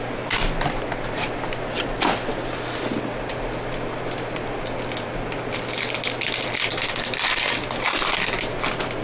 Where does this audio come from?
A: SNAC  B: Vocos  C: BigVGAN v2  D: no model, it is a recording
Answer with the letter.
D